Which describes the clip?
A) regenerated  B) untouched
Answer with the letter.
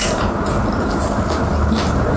B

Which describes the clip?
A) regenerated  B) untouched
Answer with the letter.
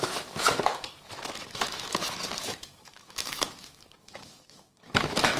A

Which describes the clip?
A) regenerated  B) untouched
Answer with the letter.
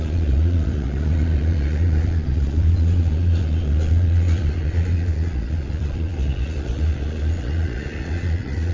A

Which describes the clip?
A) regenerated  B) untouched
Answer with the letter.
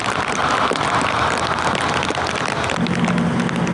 B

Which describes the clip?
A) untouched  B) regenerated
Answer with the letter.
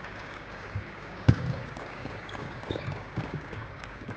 B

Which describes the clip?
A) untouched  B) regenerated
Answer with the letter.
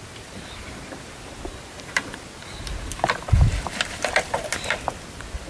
A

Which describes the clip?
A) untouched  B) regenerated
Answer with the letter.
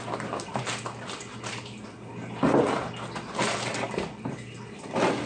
A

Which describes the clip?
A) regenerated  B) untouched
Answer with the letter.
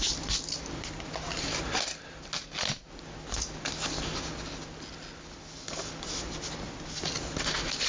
B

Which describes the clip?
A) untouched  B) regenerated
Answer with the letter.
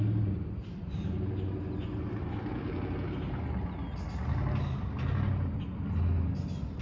A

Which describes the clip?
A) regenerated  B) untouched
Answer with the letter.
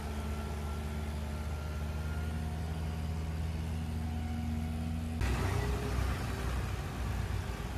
B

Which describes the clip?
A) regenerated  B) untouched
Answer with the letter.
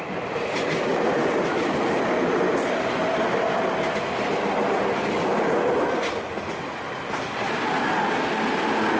B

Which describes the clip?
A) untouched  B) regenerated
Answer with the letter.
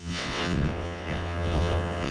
B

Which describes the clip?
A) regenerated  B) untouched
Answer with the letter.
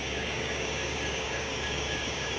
A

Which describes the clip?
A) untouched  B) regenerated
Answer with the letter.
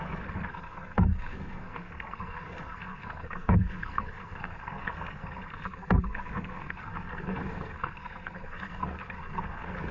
B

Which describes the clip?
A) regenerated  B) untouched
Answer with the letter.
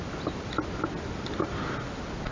B